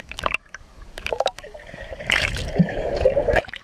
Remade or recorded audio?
remade